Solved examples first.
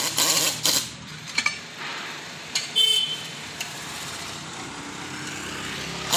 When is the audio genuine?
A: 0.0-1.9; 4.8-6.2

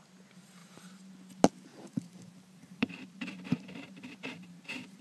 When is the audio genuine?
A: 0.0-0.6; 1.1-1.7

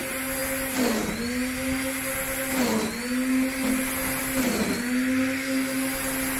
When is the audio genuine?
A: 0.0-6.4

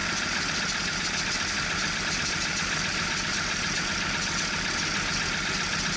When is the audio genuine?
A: 0.0-2.9; 3.9-6.0

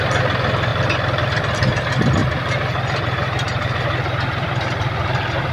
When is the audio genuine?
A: 0.0-0.7; 1.4-2.2

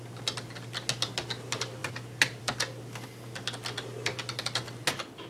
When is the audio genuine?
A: 0.0-5.3

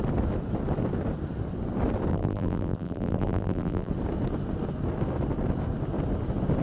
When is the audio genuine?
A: 0.0-2.1; 3.9-6.6